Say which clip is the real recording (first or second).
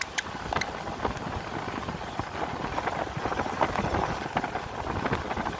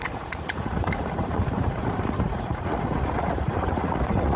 first